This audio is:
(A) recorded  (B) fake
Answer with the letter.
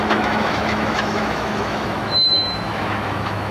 B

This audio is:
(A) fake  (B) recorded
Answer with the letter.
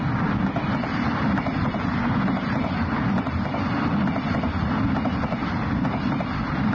B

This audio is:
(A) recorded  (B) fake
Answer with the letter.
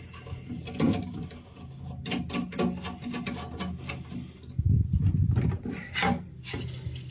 A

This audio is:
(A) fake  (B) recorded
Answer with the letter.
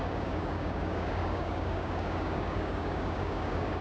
A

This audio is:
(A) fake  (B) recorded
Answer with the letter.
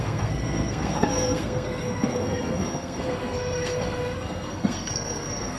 A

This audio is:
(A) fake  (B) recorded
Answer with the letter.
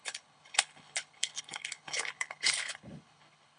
A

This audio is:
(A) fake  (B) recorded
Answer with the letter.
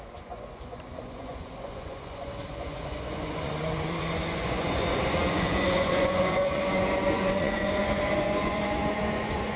A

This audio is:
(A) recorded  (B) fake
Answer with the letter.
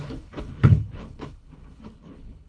B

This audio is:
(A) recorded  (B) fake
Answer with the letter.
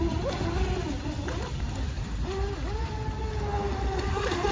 A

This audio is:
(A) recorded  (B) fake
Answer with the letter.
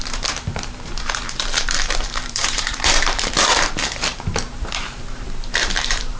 B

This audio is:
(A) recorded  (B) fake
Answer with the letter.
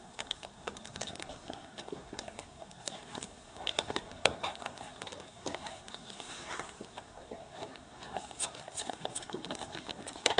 B